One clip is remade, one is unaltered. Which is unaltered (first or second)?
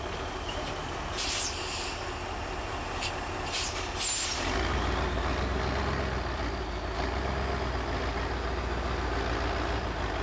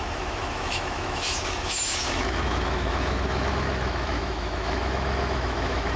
first